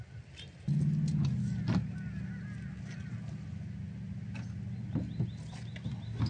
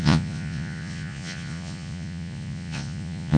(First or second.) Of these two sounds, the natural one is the first